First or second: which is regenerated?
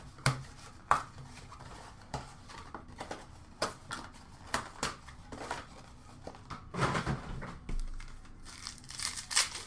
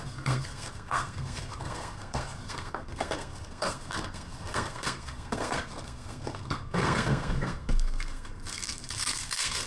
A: second